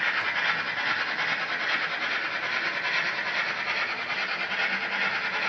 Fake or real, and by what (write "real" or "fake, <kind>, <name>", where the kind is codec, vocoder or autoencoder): real